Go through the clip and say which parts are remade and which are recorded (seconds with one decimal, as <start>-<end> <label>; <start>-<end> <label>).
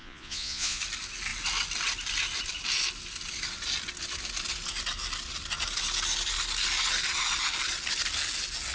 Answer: 0.0-0.8 remade; 0.8-8.7 recorded